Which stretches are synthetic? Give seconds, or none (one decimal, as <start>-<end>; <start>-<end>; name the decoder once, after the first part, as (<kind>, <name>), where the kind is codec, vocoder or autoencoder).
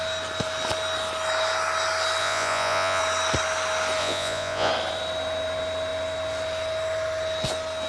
2.2-3.0 (vocoder, Vocos); 4.0-4.7